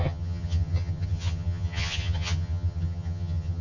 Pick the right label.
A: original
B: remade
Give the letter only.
B